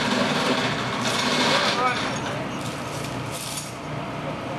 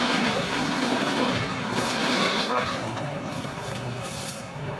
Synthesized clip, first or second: second